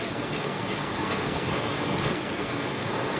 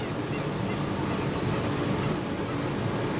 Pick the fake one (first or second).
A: first